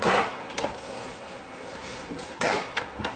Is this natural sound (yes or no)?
no